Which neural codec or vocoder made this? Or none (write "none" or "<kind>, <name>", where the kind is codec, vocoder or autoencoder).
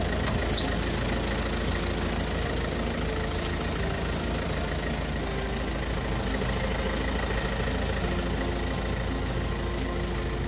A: none